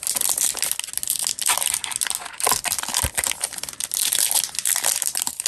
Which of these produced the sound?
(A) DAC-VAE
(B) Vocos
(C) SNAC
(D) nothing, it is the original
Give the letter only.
D